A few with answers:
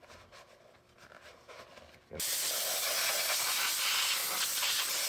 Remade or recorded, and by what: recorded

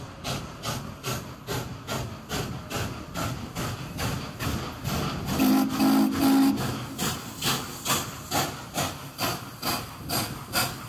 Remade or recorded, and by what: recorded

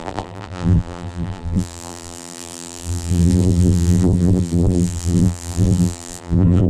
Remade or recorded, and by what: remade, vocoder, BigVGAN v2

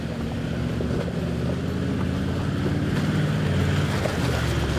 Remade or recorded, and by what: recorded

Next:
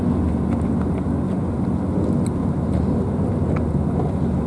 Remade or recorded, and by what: recorded